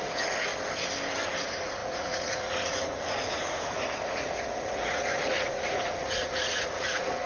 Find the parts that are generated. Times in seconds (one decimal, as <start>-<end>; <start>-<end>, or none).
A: 0.0-0.5; 1.4-7.3